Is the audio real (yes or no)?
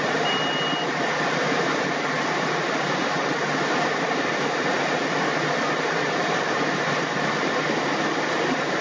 yes